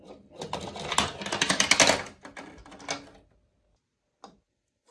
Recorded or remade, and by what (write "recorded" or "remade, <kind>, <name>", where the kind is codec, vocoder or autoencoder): recorded